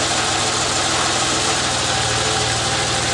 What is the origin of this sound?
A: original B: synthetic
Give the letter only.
A